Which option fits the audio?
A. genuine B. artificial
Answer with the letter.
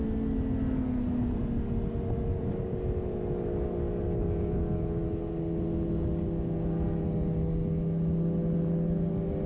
A